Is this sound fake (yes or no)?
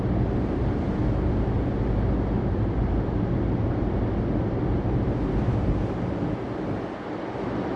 no